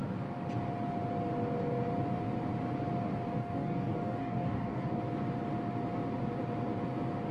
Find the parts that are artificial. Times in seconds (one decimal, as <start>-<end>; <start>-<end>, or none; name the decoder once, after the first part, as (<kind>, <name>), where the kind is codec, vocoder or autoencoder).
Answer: 3.4-5.0 (codec, DAC)